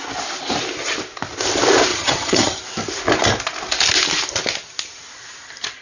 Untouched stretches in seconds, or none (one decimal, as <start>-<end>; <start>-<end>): 0.0-1.9; 2.6-5.8